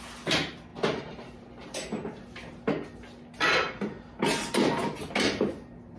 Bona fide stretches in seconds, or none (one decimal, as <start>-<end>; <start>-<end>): 0.0-6.0